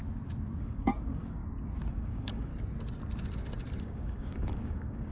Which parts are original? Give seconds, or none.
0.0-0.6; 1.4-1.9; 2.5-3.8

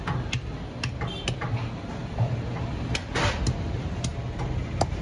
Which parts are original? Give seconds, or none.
0.0-5.0

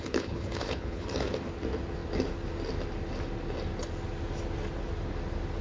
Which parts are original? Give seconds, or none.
1.1-5.6

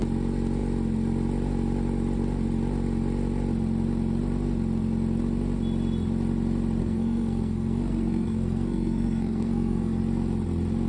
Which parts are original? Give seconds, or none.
0.0-6.8; 10.0-10.9